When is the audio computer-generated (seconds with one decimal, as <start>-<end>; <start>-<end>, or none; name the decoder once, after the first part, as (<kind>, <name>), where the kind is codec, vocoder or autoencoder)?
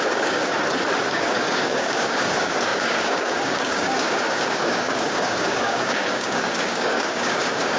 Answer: 0.0-0.4 (codec, DAC); 1.1-7.8